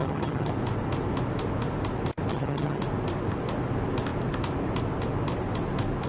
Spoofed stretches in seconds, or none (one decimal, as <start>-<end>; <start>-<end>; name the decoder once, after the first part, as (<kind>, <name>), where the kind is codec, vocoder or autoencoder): 0.0-0.5 (vocoder, HiFi-GAN); 2.3-2.8